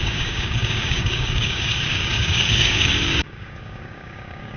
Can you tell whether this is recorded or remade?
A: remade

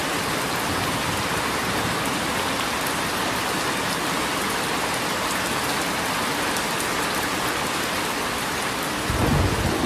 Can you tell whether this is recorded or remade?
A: recorded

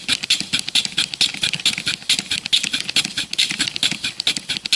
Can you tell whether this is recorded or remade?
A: recorded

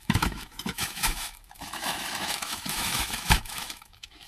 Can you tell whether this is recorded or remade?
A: remade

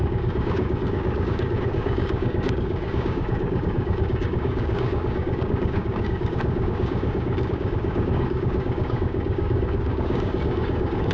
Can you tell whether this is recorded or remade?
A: remade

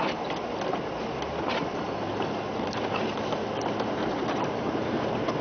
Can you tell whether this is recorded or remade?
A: remade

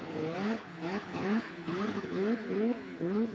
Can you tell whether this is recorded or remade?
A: remade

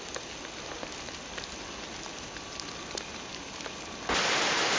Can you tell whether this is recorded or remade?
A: recorded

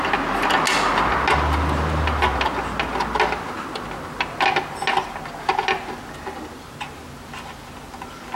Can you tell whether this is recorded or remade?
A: recorded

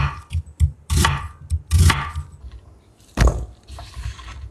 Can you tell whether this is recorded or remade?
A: recorded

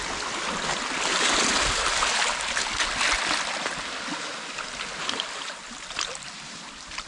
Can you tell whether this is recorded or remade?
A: recorded